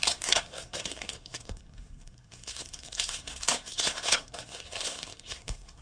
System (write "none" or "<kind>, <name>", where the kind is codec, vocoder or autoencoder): codec, SNAC